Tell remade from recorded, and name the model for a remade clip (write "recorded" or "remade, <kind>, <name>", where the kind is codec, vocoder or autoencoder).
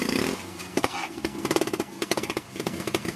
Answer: remade, codec, SNAC